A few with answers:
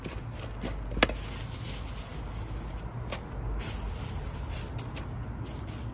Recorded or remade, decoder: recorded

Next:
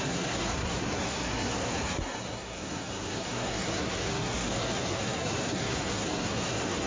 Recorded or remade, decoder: remade, codec, SNAC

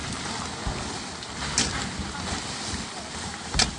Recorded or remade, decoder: recorded